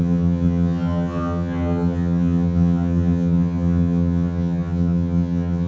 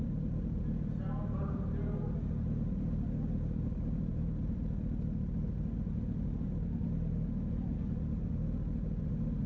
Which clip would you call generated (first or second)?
first